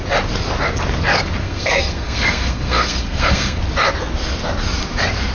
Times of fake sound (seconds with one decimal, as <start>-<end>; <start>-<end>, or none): 1.4-3.6